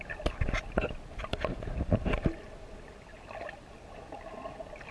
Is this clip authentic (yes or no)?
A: yes